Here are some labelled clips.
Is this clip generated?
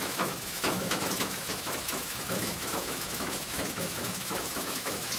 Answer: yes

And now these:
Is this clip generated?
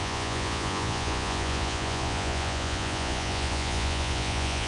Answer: yes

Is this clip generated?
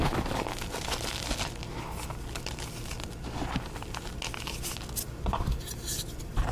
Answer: no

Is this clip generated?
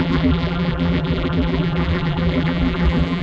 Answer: yes